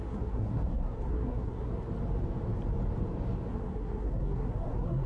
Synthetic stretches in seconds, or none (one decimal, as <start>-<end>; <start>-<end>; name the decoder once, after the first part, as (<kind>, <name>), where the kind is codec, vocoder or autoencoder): 0.0-1.7 (codec, SNAC); 3.5-5.1